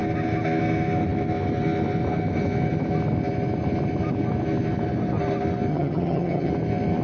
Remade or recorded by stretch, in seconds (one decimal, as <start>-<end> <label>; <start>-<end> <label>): 0.0-5.7 recorded; 5.7-6.5 remade; 6.5-7.0 recorded